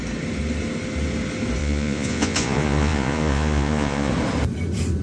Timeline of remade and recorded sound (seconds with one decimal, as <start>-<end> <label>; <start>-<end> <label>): 0.0-1.6 recorded; 1.6-4.1 remade; 4.1-5.0 recorded